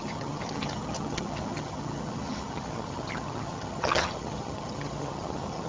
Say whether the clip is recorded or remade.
remade